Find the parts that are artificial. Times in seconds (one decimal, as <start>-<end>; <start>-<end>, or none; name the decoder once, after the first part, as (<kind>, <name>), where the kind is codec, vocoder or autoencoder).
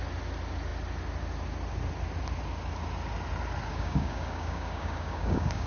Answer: 3.7-5.7 (codec, DAC)